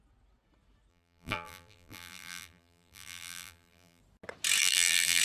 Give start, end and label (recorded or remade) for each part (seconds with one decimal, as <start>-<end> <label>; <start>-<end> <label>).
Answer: 0.0-0.9 recorded; 0.9-4.0 remade; 4.0-4.6 recorded; 4.6-5.2 remade